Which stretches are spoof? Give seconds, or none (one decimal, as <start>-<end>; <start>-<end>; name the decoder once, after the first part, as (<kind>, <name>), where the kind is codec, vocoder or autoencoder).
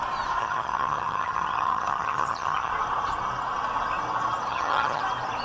0.4-2.7 (vocoder, HiFi-GAN); 4.5-5.0